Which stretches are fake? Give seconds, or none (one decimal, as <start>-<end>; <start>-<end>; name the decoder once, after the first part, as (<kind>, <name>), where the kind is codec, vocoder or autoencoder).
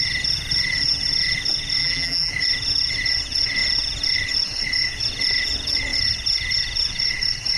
1.8-2.3 (vocoder, BigVGAN v2)